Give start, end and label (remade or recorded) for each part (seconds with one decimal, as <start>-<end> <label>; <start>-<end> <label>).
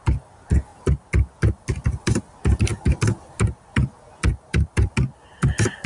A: 0.0-4.3 recorded; 4.3-4.9 remade; 4.9-5.9 recorded